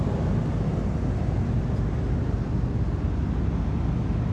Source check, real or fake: real